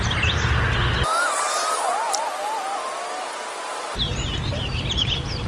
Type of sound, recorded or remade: recorded